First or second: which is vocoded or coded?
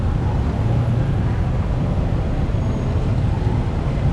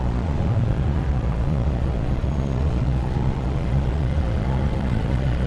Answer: second